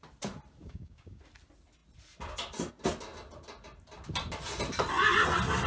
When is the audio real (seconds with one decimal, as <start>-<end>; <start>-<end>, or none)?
0.0-0.6; 1.2-5.7